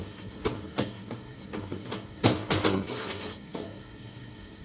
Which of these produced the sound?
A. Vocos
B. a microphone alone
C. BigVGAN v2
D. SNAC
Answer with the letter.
D